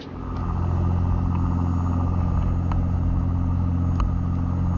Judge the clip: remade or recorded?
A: recorded